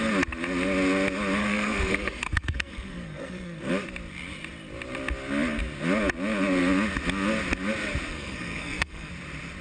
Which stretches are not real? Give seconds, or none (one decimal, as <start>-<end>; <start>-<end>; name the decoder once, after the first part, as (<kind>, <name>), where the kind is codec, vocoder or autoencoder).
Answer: 1.4-3.7 (codec, SNAC); 8.1-9.1

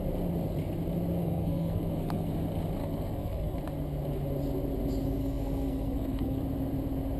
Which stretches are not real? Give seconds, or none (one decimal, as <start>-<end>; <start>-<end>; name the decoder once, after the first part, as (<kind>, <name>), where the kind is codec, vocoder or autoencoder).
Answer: 1.2-2.3 (codec, SNAC); 2.8-3.6; 5.2-6.4

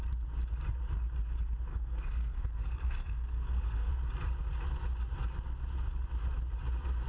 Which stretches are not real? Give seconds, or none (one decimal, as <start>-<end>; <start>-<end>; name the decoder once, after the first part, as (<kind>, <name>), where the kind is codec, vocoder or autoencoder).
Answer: 1.7-3.9 (codec, SNAC)

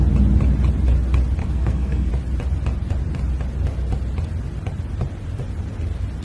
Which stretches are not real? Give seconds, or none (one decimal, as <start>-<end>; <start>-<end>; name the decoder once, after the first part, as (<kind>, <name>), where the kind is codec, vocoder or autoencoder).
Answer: 1.4-2.1 (codec, SNAC)